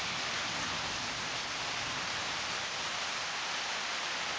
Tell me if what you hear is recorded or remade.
recorded